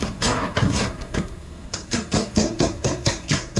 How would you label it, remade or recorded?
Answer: remade